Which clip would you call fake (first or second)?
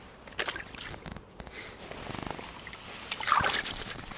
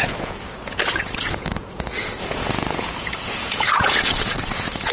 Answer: second